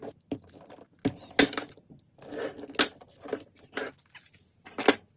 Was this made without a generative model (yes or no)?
yes